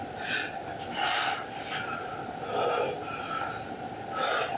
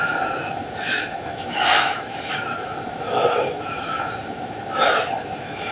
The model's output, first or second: second